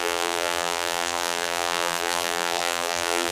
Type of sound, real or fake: fake